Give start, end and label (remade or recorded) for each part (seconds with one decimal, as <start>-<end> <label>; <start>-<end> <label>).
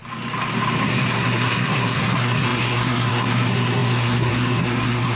0.0-0.8 recorded; 0.8-5.2 remade